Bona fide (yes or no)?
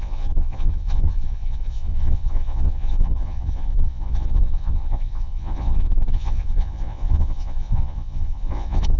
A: no